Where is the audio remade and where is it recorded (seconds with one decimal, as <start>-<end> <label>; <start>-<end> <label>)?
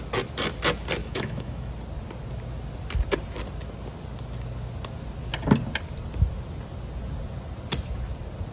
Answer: 0.0-1.0 recorded; 1.0-1.7 remade; 1.7-8.5 recorded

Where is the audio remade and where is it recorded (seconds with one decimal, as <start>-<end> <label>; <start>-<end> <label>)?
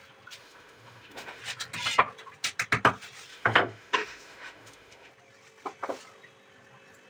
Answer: 0.0-0.4 recorded; 0.4-1.4 remade; 1.4-3.3 recorded; 3.3-5.1 remade; 5.1-7.1 recorded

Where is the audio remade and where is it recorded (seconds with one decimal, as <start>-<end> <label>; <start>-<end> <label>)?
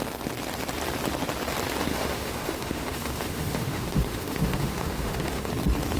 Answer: 0.0-1.9 recorded; 1.9-5.5 remade; 5.5-6.0 recorded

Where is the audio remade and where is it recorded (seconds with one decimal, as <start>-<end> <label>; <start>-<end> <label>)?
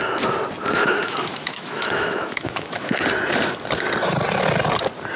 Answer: 0.0-0.6 recorded; 0.6-3.0 remade; 3.0-5.2 recorded